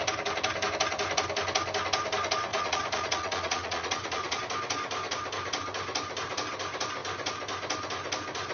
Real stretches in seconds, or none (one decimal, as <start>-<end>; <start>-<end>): 0.0-2.5; 4.4-8.5